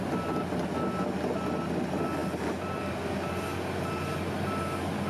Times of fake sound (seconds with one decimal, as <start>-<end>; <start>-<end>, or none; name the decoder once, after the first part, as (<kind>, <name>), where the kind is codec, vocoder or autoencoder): none